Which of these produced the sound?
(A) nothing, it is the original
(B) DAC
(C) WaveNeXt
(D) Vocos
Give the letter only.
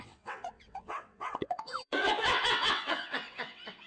C